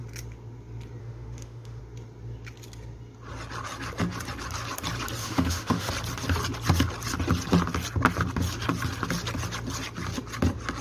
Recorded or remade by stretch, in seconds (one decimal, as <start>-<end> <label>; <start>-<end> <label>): 0.0-1.0 recorded; 1.0-1.8 remade; 1.8-5.2 recorded; 5.2-5.9 remade; 5.9-10.8 recorded